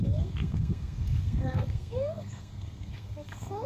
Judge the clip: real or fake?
fake